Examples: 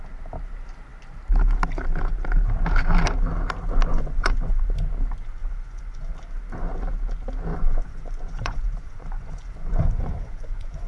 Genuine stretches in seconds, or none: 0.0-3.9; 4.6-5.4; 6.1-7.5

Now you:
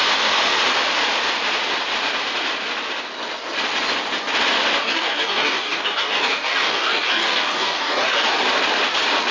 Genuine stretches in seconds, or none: 0.0-4.8; 8.4-9.3

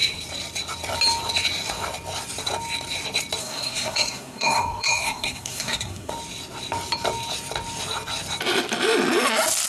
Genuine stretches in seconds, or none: 0.0-3.4; 6.1-9.7

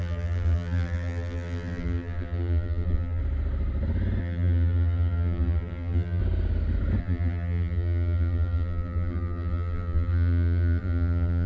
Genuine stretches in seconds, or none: 3.2-4.2; 6.2-7.0

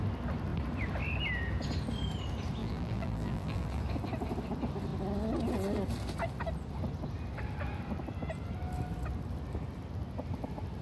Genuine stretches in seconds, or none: 0.0-2.6; 3.8-10.8

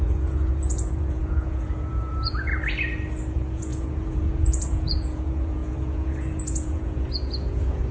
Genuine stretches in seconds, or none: 2.5-3.3

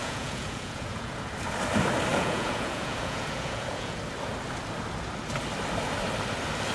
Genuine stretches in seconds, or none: 1.3-2.1; 4.0-6.7